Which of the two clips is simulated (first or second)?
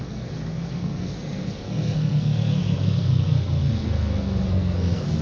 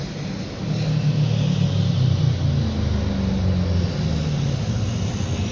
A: first